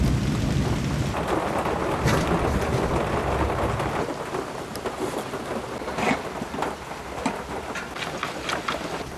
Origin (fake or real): real